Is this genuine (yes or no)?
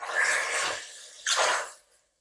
yes